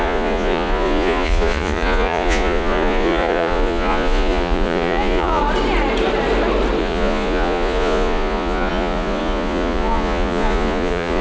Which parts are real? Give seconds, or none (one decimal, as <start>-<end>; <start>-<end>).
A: 5.4-6.8